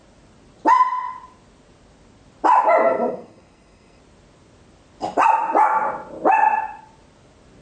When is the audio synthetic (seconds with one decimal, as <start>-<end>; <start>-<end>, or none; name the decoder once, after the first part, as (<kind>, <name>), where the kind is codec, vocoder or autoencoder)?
2.8-4.0 (codec, SNAC)